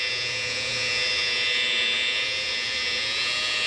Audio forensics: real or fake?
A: fake